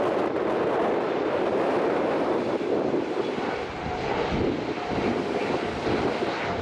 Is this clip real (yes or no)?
yes